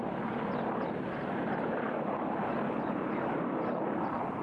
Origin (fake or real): real